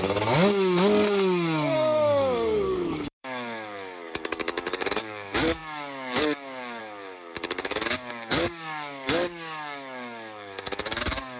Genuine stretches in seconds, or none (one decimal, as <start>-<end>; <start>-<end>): none